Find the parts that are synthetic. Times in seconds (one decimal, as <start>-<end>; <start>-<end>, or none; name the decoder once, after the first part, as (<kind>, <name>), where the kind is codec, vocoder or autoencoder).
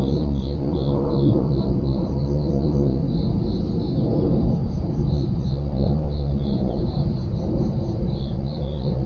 0.0-3.0 (vocoder, Vocos); 5.1-6.8; 8.2-9.1